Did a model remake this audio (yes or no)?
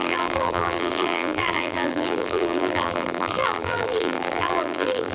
yes